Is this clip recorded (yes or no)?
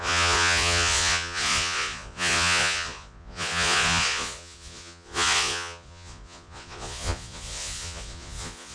no